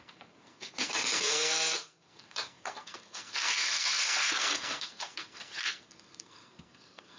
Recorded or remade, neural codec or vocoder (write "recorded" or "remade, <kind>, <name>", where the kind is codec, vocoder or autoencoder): remade, codec, SNAC